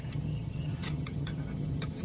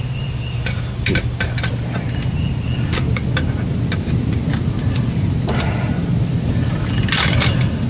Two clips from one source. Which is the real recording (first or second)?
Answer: second